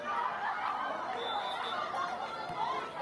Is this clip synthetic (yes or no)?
no